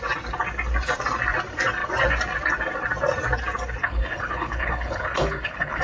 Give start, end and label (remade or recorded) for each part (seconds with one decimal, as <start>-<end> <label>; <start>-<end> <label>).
0.0-3.8 recorded; 3.8-5.8 remade